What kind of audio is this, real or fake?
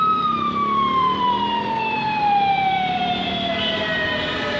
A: fake